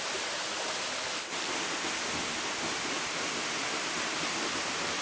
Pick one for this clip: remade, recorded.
recorded